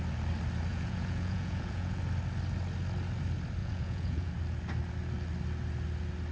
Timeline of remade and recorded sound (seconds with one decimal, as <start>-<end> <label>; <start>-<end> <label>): 0.0-0.7 recorded; 0.7-2.0 remade; 2.0-3.6 recorded; 3.6-4.3 remade; 4.3-6.3 recorded